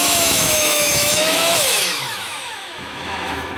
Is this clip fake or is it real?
fake